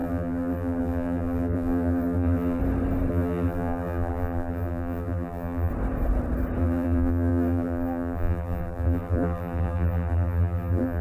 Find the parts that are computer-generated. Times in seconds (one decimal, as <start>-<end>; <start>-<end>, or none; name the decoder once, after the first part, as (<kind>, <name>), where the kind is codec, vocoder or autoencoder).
0.0-2.6 (vocoder, BigVGAN v2); 3.1-5.7; 6.6-11.0